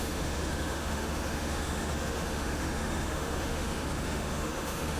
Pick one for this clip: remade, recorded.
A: remade